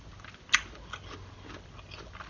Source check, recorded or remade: recorded